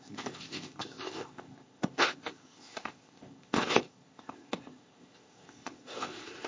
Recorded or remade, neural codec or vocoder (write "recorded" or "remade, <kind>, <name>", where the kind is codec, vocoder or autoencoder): remade, codec, ZipCodec